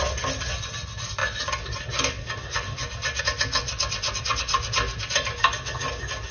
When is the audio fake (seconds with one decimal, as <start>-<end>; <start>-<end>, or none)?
none